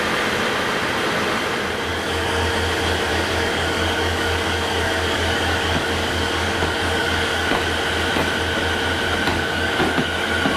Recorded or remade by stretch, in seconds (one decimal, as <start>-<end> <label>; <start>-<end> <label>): 0.0-1.9 recorded; 1.9-2.5 remade; 2.5-3.1 recorded; 3.1-7.5 remade; 7.5-9.3 recorded; 9.3-9.8 remade; 9.8-10.6 recorded